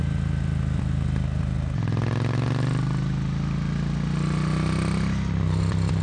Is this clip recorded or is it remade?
recorded